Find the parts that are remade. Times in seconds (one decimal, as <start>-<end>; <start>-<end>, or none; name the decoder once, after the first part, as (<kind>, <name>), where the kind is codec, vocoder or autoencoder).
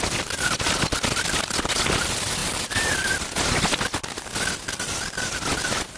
none